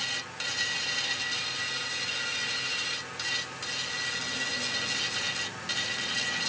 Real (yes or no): yes